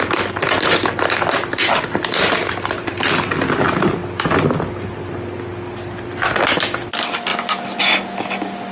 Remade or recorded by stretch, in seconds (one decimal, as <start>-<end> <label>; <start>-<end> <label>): 0.0-8.7 recorded